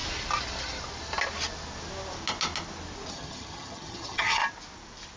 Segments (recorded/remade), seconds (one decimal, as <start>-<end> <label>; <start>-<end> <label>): 0.0-3.1 recorded; 3.1-4.4 remade; 4.4-5.2 recorded